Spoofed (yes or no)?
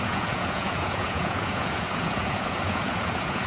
yes